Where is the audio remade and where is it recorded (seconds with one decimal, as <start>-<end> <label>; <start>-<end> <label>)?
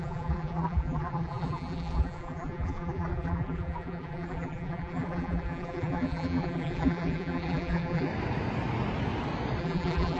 0.0-8.1 remade; 8.1-9.6 recorded; 9.6-10.2 remade